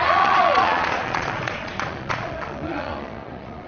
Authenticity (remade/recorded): remade